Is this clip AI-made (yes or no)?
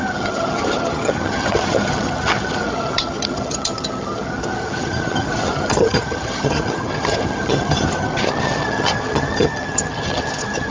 yes